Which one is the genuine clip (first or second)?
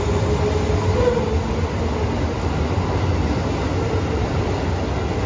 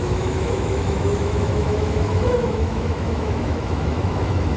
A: first